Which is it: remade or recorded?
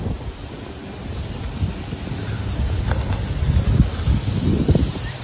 recorded